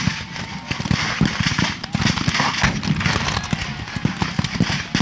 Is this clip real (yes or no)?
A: yes